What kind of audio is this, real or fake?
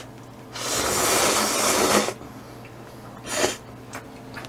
real